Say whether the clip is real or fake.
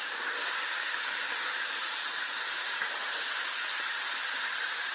fake